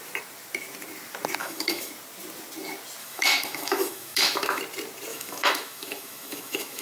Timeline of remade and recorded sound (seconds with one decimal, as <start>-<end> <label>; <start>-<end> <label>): 0.0-1.4 recorded; 1.4-1.9 remade; 1.9-3.0 recorded; 3.0-4.6 remade; 4.6-5.1 recorded; 5.1-6.8 remade